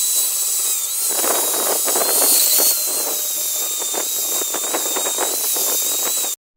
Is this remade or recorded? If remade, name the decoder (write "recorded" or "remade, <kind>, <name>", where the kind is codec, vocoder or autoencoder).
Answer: recorded